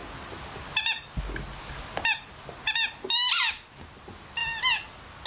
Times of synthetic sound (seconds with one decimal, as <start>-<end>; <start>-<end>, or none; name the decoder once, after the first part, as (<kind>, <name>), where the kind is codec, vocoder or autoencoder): none